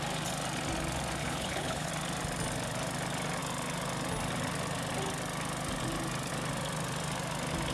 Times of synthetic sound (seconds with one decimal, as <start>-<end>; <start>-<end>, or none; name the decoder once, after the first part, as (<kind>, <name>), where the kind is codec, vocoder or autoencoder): 1.2-1.9 (codec, HILCodec)